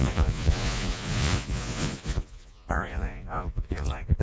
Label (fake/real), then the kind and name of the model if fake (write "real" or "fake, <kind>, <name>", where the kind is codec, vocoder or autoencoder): fake, vocoder, Vocos